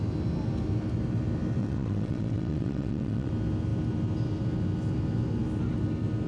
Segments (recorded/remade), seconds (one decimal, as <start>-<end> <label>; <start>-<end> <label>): 0.0-1.6 recorded; 1.6-3.3 remade; 3.3-6.3 recorded